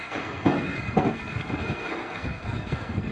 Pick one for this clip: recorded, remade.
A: remade